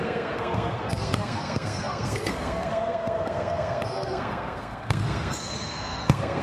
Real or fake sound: fake